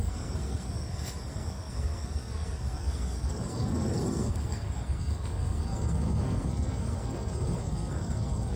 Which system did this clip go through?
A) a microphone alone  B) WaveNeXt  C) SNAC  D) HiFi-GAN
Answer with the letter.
C